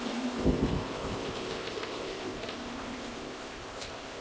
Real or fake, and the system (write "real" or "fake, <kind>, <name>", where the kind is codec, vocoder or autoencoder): fake, codec, ZipCodec